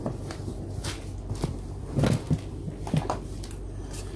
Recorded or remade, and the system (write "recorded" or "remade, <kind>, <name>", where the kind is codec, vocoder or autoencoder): recorded